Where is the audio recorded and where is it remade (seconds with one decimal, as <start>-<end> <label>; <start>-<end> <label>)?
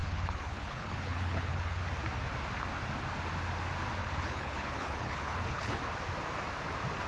0.0-1.8 remade; 1.8-4.0 recorded; 4.0-5.8 remade; 5.8-7.1 recorded